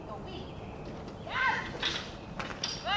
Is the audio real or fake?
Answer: real